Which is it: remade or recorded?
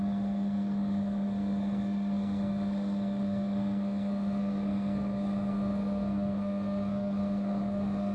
remade